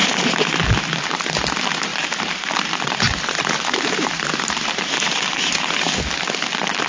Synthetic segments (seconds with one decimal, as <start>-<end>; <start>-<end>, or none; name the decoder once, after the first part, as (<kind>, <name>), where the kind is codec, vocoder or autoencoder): 1.9-5.2 (vocoder, BigVGAN v2)